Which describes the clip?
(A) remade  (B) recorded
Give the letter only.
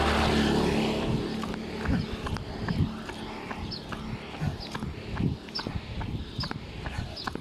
B